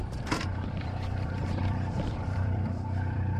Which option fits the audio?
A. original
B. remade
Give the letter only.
B